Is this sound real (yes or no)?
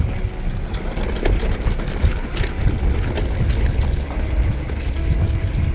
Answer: yes